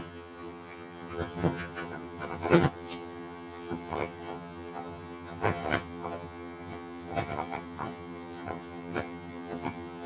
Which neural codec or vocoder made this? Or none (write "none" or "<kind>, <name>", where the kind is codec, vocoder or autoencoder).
vocoder, HiFi-GAN